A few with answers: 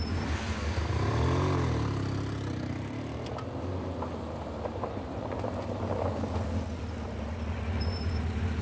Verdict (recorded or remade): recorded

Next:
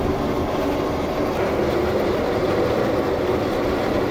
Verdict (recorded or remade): recorded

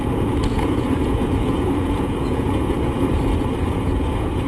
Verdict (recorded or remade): remade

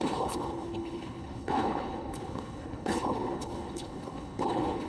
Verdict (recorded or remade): remade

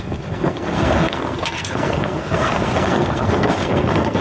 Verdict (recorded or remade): remade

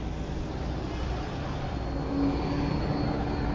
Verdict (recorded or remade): recorded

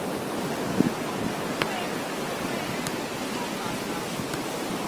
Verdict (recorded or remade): recorded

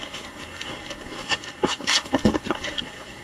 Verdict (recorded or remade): remade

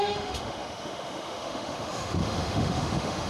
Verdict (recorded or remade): remade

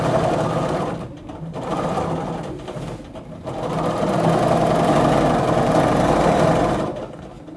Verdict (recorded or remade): recorded